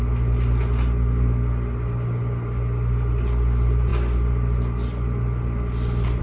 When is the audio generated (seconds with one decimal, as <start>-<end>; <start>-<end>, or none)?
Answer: none